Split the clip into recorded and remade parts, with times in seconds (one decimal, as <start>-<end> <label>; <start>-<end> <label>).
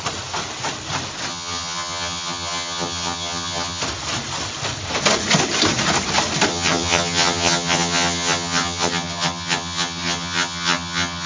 0.0-1.3 recorded; 1.3-3.8 remade; 3.8-6.5 recorded; 6.5-11.3 remade